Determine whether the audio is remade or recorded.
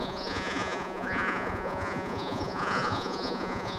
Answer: remade